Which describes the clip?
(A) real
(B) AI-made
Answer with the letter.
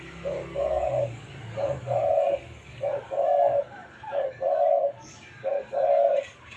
B